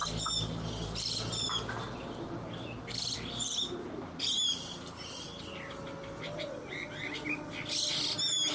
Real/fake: real